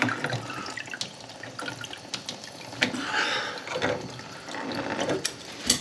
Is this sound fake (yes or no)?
no